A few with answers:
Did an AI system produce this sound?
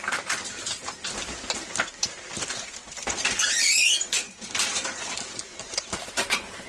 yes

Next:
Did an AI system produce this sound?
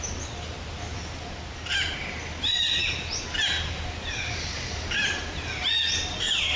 no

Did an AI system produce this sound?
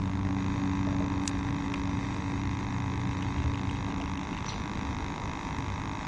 no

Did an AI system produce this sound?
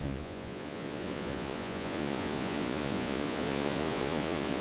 yes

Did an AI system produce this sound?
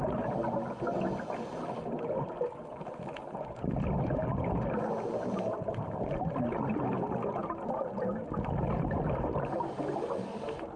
no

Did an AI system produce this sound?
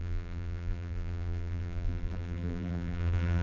yes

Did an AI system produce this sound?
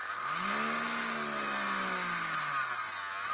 no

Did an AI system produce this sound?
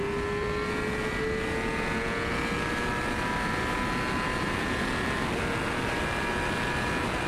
no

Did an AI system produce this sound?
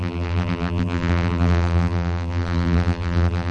yes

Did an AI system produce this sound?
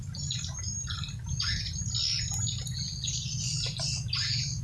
no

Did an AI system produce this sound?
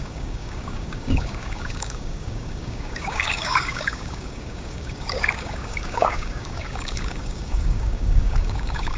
yes